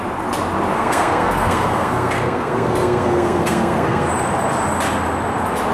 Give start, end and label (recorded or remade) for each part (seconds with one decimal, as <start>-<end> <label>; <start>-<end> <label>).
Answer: 0.0-0.7 recorded; 0.7-4.1 remade; 4.1-5.7 recorded